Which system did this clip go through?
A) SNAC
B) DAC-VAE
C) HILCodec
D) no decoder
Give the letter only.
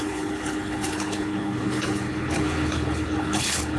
C